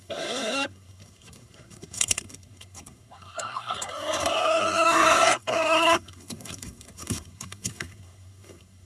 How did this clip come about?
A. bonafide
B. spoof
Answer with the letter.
B